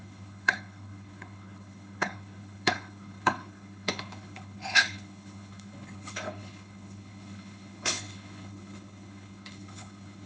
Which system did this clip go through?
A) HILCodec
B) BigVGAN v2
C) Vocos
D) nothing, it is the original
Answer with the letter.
A